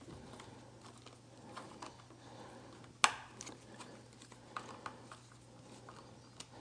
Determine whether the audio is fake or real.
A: real